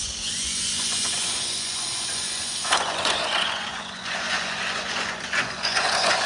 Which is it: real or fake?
fake